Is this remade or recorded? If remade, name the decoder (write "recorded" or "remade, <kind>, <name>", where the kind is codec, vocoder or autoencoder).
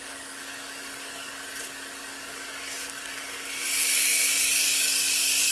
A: remade, codec, DAC